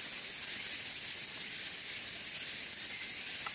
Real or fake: real